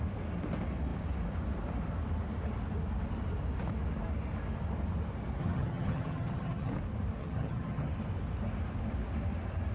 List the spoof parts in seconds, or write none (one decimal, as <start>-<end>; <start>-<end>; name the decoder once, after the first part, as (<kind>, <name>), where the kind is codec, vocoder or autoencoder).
5.4-6.7 (vocoder, HiFi-GAN); 7.2-7.9